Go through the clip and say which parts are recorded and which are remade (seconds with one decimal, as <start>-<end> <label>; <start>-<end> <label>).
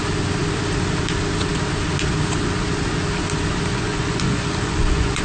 0.0-3.7 recorded; 3.7-5.2 remade